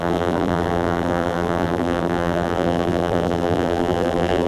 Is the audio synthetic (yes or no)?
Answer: yes